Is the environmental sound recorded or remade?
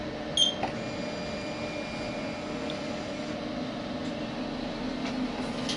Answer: recorded